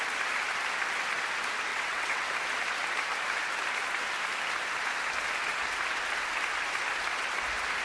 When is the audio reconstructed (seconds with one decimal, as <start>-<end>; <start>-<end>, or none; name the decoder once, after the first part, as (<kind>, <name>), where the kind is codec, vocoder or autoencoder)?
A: 1.7-2.3 (vocoder, WaveNeXt)